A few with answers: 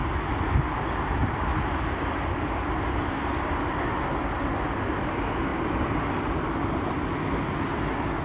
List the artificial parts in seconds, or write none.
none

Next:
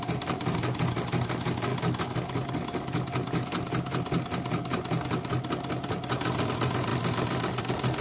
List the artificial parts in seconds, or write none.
none

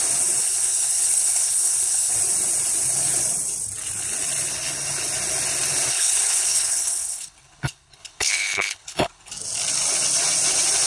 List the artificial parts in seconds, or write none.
0.4-2.1 (codec, HILCodec); 5.9-9.3